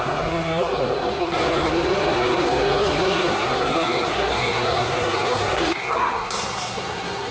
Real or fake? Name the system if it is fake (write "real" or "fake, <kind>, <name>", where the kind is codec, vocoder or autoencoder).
fake, codec, SNAC